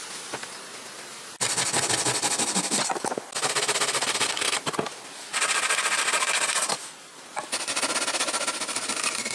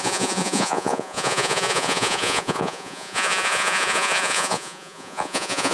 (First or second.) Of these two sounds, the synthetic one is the second